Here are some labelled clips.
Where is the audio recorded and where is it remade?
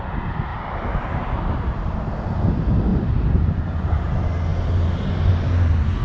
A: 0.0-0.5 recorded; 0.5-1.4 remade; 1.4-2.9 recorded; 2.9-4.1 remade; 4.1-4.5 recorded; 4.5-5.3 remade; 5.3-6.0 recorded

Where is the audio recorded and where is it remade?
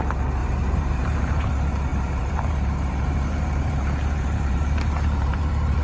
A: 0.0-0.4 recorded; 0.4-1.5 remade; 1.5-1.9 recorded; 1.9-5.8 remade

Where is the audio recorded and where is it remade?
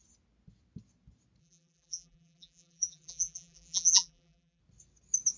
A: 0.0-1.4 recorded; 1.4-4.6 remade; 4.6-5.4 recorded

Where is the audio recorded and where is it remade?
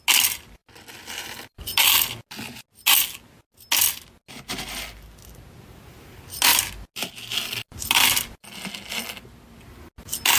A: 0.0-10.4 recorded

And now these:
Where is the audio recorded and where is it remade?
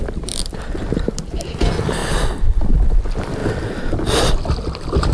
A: 0.0-5.1 recorded